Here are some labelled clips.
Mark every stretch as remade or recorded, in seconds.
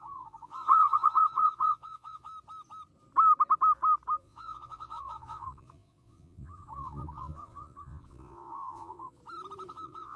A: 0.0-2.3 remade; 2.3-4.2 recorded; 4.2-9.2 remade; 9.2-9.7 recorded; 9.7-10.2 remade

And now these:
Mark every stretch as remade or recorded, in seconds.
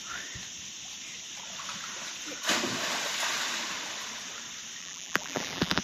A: 0.0-4.8 recorded; 4.8-5.8 remade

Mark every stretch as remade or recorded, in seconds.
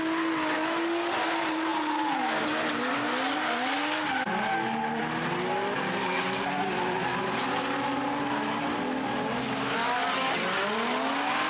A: 0.0-11.5 recorded